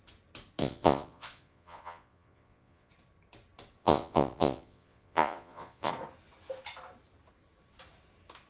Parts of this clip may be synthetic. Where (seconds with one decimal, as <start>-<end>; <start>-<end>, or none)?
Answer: 0.6-2.9; 3.8-5.9